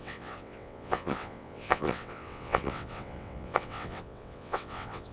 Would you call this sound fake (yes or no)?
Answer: yes